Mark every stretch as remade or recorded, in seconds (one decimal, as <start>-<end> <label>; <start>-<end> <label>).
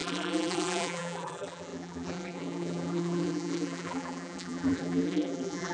0.0-5.7 remade